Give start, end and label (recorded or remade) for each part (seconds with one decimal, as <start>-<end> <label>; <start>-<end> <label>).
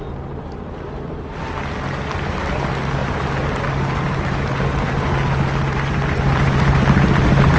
0.0-7.6 recorded